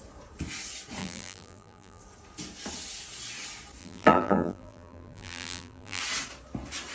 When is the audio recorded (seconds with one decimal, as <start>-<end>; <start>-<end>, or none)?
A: 0.0-1.0; 2.0-3.8; 6.0-6.9